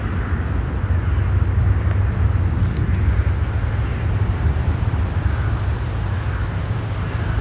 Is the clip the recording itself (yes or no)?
yes